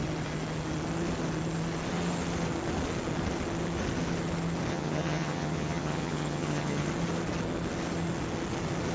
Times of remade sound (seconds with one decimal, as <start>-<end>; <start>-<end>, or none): 4.7-6.9